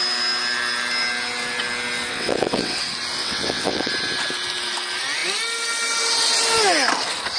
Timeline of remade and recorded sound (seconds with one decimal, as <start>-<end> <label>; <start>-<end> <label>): 0.0-2.1 recorded; 2.1-2.8 remade; 2.8-3.2 recorded; 3.2-3.9 remade; 3.9-7.4 recorded